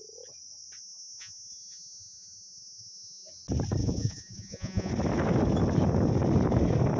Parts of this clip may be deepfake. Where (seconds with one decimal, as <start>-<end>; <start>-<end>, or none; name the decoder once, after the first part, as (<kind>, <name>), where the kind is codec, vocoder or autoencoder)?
0.8-3.3 (vocoder, Vocos); 3.8-4.9